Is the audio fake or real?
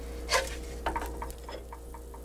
real